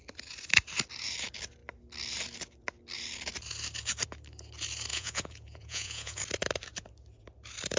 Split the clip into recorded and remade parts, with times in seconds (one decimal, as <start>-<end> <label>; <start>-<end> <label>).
0.0-4.9 recorded; 4.9-6.2 remade; 6.2-7.8 recorded